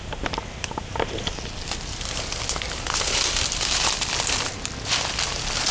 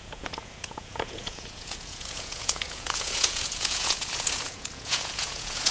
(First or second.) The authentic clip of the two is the first